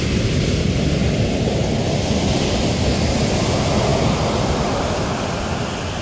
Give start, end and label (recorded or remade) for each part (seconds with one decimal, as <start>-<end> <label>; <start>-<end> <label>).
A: 0.0-6.0 recorded